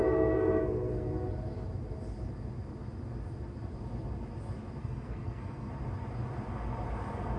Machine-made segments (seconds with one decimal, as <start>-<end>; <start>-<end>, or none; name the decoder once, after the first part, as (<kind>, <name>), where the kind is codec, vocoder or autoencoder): 0.0-1.1 (codec, SNAC); 4.8-5.7